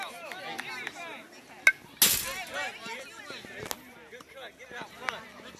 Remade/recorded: recorded